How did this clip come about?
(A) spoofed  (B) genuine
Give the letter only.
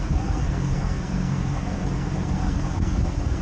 A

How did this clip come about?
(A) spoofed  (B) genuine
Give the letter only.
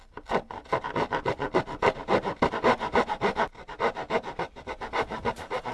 B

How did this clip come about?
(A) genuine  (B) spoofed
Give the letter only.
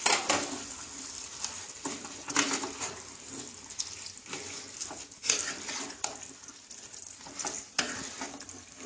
A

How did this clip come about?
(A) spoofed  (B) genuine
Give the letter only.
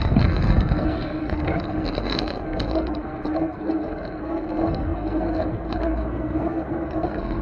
A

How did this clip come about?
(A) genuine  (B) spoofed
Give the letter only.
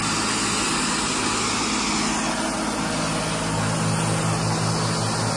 A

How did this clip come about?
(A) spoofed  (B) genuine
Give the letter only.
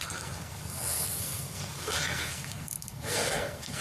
A